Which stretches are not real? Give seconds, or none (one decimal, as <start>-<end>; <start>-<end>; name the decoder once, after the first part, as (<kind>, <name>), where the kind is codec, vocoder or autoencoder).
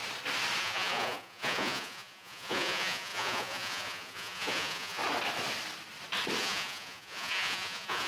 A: 0.6-5.0 (vocoder, Vocos); 6.4-8.1